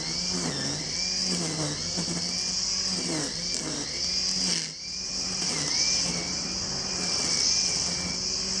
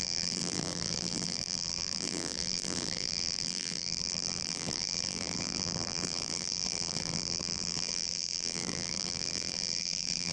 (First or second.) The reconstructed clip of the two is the second